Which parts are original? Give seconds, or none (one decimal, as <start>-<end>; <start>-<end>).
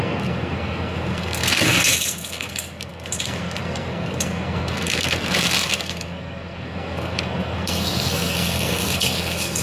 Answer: none